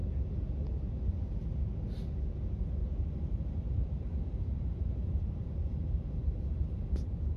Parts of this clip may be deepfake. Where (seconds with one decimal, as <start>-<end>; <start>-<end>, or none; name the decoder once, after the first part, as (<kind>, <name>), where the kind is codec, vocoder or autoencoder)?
2.8-5.7 (vocoder, BigVGAN v2)